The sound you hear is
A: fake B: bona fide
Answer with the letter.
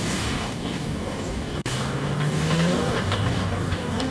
A